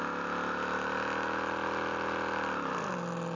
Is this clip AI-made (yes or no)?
no